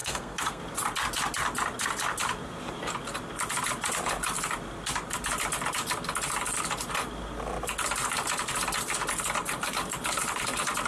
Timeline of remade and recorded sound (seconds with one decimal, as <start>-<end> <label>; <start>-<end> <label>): 0.0-0.6 remade; 0.6-10.9 recorded